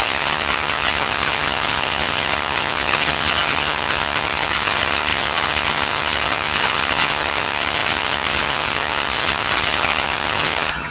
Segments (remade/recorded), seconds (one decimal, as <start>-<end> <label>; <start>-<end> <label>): 0.0-10.9 remade